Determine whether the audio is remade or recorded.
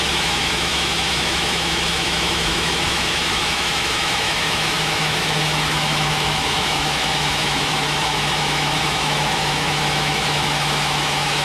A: remade